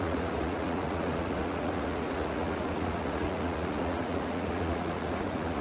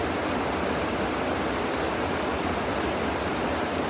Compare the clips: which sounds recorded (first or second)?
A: second